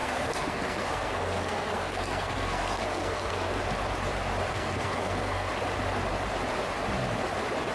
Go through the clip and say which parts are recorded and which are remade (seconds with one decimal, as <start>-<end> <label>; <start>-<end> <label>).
0.0-3.6 remade; 3.6-4.5 recorded; 4.5-5.5 remade; 5.5-7.7 recorded